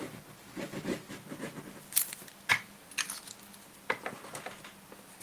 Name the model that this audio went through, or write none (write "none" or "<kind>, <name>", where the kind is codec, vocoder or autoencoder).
none